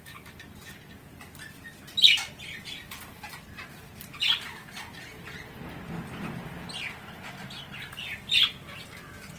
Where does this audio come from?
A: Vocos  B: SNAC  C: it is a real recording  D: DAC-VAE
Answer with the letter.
C